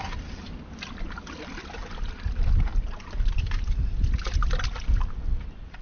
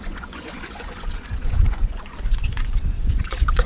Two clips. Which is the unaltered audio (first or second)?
first